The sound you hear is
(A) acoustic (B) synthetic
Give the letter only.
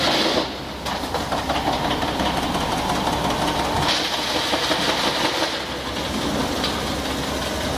A